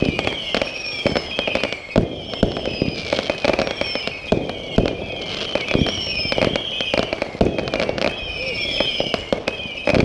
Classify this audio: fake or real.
real